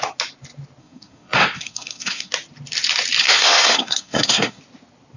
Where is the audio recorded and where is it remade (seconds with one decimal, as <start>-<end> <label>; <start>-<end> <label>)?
0.0-0.8 recorded; 0.8-2.3 remade; 2.3-3.2 recorded; 3.2-4.6 remade; 4.6-5.2 recorded